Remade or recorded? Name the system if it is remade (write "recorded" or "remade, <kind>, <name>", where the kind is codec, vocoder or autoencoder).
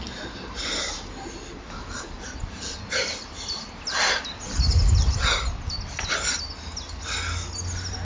recorded